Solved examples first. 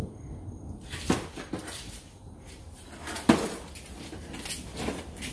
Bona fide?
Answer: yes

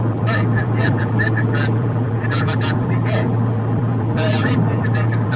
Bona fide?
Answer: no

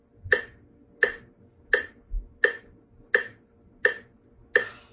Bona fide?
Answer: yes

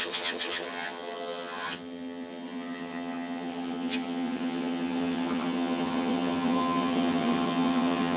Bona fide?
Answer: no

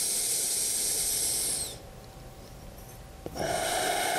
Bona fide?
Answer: yes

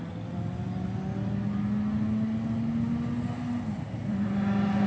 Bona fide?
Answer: yes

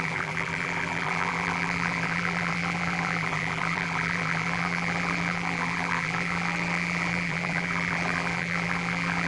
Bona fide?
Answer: no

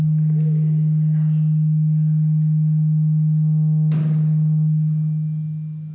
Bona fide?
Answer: yes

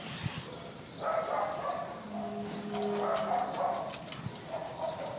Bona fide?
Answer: yes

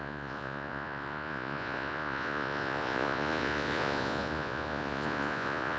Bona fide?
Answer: no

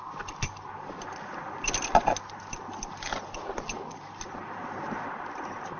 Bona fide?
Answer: yes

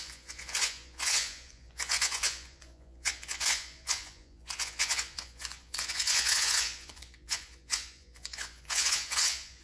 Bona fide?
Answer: no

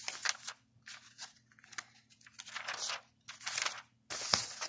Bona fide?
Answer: yes